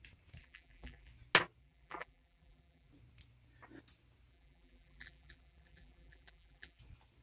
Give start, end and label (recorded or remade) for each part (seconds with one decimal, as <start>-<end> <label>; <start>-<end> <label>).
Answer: 0.0-0.4 recorded; 0.4-1.1 remade; 1.1-1.6 recorded; 1.6-2.9 remade; 2.9-4.3 recorded; 4.3-6.8 remade; 6.8-7.2 recorded